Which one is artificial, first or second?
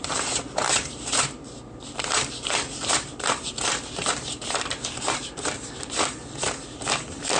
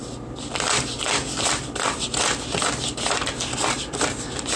first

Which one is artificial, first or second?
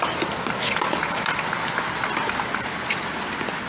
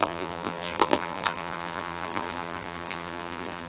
second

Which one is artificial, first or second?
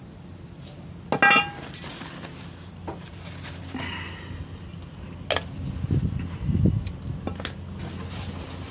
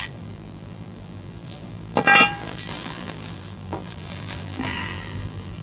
second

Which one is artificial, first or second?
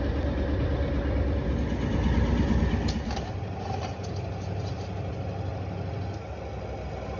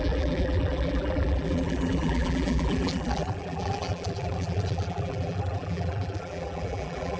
second